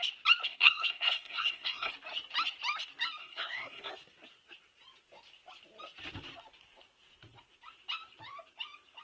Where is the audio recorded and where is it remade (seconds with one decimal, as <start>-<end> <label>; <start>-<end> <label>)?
0.0-0.4 recorded; 0.4-1.9 remade; 1.9-3.2 recorded; 3.2-3.9 remade; 3.9-9.0 recorded